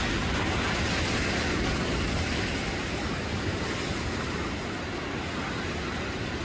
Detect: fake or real real